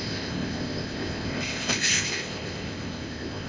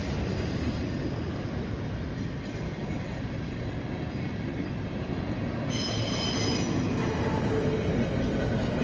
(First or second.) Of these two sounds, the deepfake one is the first